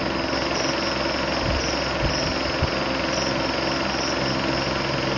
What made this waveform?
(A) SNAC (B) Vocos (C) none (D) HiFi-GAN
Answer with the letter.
C